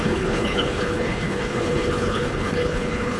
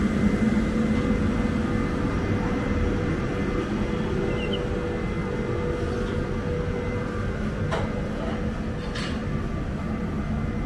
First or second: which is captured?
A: second